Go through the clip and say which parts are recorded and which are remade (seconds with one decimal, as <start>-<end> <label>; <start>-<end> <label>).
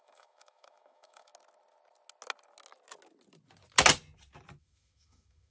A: 0.0-1.3 remade; 1.3-4.6 recorded; 4.6-5.5 remade